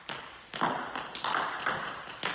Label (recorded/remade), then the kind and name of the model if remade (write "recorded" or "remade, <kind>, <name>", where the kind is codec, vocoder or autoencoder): recorded